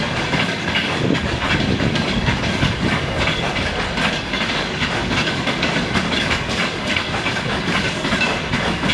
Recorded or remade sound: remade